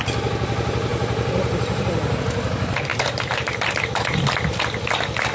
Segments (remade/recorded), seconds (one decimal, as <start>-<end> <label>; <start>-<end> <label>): 0.0-0.9 recorded; 0.9-2.2 remade; 2.2-2.9 recorded; 2.9-4.3 remade; 4.3-5.3 recorded